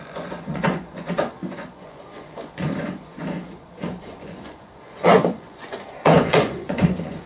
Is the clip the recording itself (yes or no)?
no